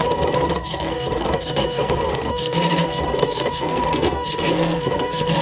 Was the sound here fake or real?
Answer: fake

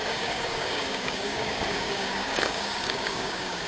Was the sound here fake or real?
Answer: fake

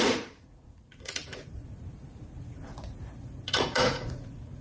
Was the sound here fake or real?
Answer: fake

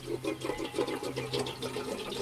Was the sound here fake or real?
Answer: real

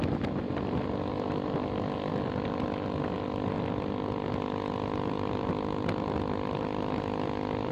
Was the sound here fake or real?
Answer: real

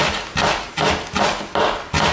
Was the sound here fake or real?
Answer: real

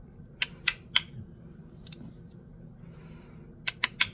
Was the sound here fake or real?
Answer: real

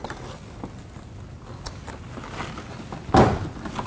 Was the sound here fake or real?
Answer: real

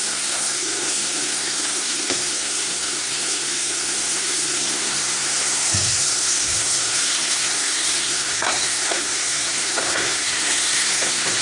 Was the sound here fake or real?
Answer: fake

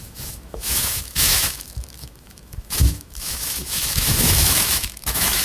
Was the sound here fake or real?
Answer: fake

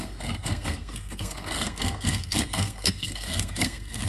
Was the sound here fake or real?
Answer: fake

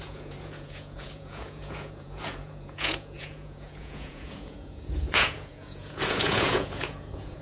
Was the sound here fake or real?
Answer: fake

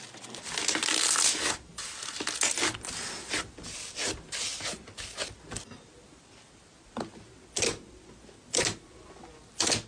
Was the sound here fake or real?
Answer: real